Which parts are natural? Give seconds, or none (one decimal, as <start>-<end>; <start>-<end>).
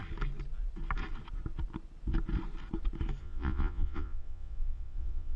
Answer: 0.0-3.2